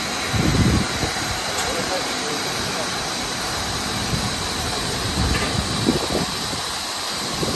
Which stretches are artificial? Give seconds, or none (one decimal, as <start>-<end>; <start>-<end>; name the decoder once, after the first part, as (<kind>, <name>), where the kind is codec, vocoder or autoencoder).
1.0-5.9 (vocoder, BigVGAN v2); 6.9-7.5